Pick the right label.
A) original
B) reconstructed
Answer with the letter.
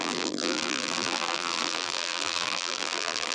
B